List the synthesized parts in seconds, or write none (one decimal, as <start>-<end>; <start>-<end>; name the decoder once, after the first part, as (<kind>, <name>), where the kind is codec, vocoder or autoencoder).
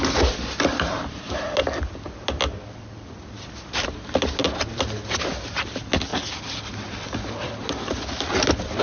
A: none